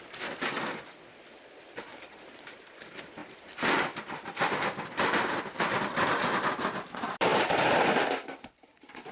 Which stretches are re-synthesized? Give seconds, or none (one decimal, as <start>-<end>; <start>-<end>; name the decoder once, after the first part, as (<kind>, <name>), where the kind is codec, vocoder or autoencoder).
0.0-9.1 (vocoder, BigVGAN v2)